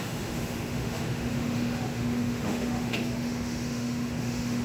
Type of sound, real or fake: fake